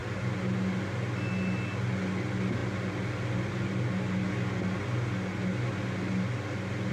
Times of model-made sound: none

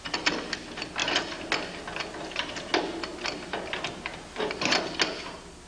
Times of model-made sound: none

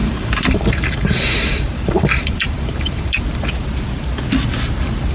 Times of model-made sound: 0.0-3.1 (vocoder, BigVGAN v2)

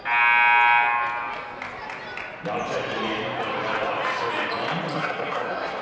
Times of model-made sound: 4.9-5.8 (codec, SNAC)

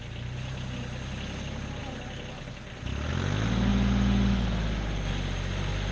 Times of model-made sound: none

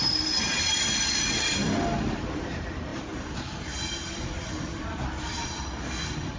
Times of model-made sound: none

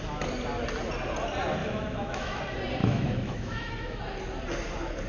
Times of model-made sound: 1.6-2.4 (autoencoder, DAC-VAE); 2.8-4.0